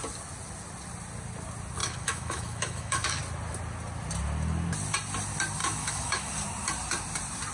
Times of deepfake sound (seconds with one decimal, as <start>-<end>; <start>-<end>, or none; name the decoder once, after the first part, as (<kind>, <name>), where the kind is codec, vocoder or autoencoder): 1.8-3.2 (autoencoder, DAC-VAE); 5.6-6.3